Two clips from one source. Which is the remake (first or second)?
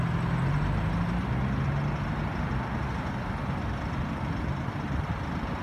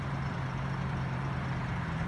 second